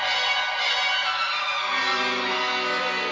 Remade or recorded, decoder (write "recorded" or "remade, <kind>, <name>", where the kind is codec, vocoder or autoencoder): recorded